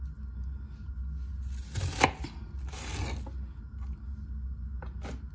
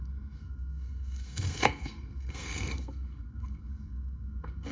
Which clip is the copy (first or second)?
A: second